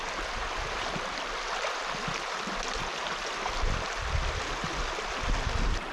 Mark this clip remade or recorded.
recorded